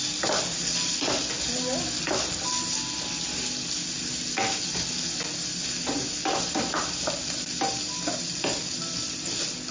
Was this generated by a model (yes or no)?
no